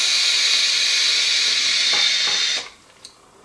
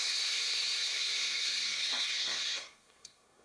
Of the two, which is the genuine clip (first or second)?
first